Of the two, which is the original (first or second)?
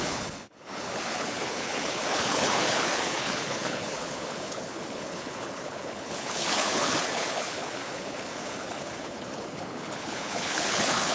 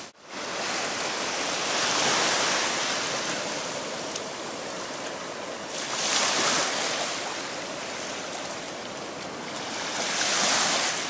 second